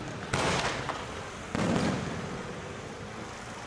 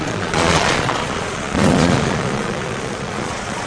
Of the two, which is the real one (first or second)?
first